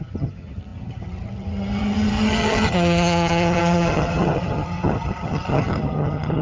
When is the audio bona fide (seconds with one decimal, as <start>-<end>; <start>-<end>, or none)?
none